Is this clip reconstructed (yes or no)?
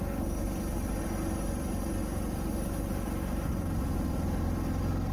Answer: no